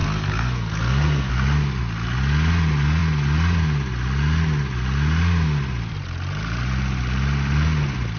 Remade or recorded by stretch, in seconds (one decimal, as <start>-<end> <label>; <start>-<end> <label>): 0.0-1.3 remade; 1.3-8.2 recorded